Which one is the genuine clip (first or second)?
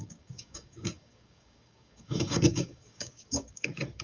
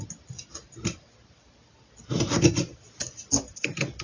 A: second